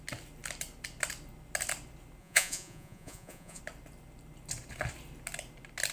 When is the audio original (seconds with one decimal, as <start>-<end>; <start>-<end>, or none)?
0.0-2.2; 3.6-5.9